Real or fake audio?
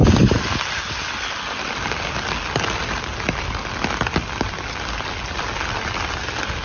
real